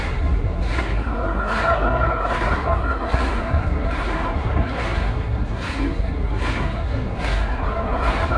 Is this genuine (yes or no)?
no